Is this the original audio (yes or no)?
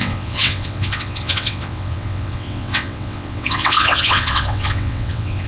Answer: no